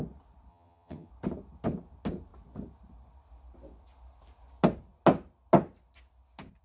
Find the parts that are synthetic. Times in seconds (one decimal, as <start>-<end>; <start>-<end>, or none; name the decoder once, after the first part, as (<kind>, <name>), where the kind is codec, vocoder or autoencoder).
0.5-1.1 (vocoder, HiFi-GAN)